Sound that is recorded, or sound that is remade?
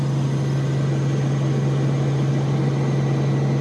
recorded